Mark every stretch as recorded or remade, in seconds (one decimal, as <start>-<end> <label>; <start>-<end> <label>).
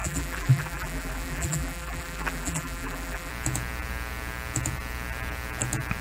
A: 0.0-3.3 remade; 3.3-6.0 recorded